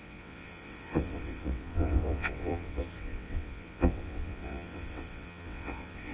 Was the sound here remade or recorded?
remade